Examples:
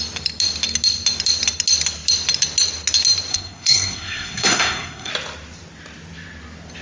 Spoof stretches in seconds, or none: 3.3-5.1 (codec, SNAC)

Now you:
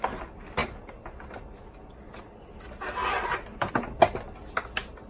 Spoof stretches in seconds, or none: 3.0-3.7 (vocoder, BigVGAN v2)

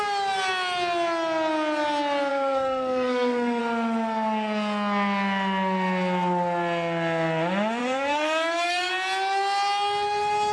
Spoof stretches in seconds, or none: 2.3-3.6 (codec, SNAC); 7.8-8.9

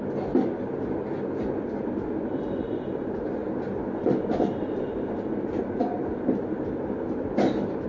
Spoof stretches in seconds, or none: none